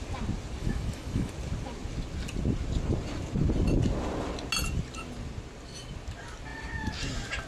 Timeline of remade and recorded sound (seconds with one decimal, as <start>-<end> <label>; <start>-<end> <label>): 0.0-0.6 recorded; 0.6-1.3 remade; 1.3-7.5 recorded